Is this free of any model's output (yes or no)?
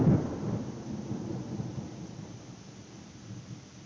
yes